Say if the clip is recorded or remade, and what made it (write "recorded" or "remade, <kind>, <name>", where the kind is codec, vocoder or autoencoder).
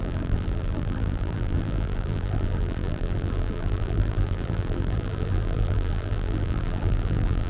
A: remade, vocoder, BigVGAN v2